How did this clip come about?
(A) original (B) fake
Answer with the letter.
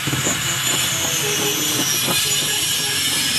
A